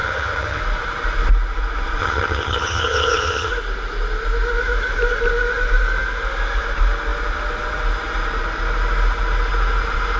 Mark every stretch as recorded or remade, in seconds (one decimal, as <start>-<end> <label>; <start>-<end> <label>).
0.0-0.6 remade; 0.6-2.0 recorded; 2.0-3.5 remade; 3.5-10.2 recorded